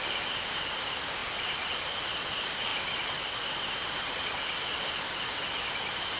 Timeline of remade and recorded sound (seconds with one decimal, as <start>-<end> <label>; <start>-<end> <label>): 0.0-6.2 recorded

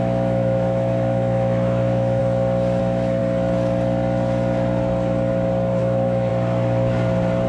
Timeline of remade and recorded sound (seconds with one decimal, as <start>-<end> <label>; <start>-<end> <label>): 0.0-2.2 remade; 2.2-2.8 recorded; 2.8-3.2 remade; 3.2-5.8 recorded; 5.8-6.3 remade; 6.3-7.5 recorded

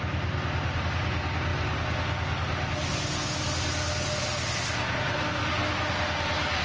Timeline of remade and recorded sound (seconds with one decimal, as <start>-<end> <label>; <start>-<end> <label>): 0.0-6.6 recorded